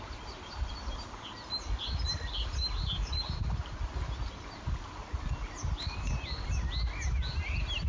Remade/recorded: recorded